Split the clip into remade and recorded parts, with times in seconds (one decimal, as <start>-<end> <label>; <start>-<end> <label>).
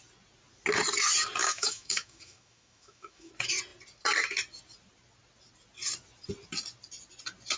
0.0-1.4 recorded; 1.4-3.3 remade; 3.3-7.6 recorded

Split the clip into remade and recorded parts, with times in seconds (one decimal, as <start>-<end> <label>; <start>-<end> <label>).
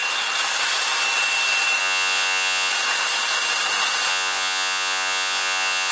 0.0-1.8 recorded; 1.8-2.7 remade; 2.7-4.1 recorded; 4.1-5.9 remade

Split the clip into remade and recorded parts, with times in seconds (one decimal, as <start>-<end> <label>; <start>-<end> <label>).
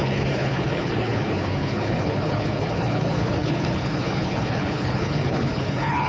0.0-6.1 remade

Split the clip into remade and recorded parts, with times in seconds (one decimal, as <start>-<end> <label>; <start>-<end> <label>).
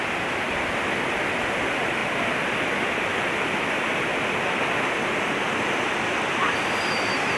0.0-7.4 recorded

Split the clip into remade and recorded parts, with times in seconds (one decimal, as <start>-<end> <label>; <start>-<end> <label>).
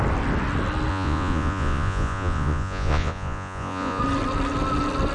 0.0-0.9 recorded; 0.9-4.0 remade; 4.0-5.1 recorded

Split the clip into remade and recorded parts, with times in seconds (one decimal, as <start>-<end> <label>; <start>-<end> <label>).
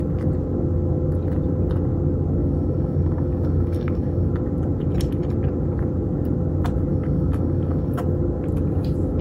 0.0-2.4 recorded; 2.4-4.3 remade; 4.3-6.9 recorded; 6.9-8.0 remade; 8.0-9.2 recorded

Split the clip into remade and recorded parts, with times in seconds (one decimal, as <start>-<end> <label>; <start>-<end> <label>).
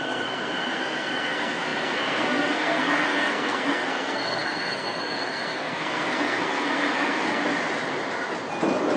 0.0-7.4 remade; 7.4-9.0 recorded